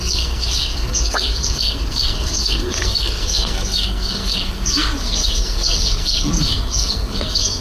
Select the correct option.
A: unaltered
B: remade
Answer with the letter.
B